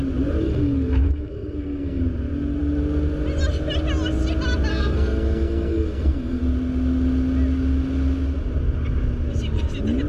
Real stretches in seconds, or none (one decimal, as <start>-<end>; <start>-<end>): 0.0-0.4; 2.0-4.7; 6.4-10.1